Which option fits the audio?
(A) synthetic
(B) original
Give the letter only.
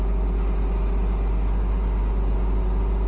B